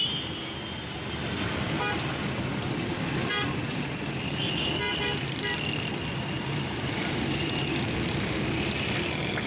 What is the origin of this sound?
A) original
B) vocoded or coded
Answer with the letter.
A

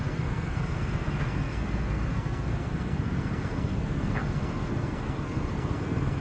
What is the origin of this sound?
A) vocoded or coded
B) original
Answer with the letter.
A